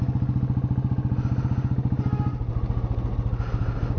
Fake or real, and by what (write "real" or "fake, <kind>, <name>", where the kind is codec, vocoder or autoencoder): real